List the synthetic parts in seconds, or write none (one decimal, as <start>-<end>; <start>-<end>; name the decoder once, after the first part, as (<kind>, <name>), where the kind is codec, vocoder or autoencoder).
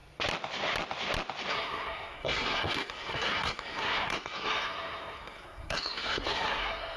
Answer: 1.5-7.0 (codec, SNAC)